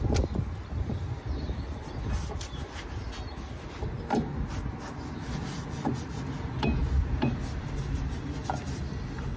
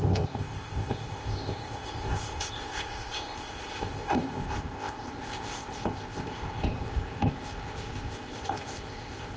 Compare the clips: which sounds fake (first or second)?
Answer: second